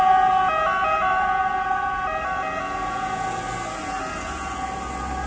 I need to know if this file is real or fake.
real